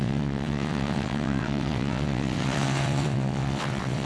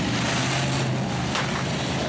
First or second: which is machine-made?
first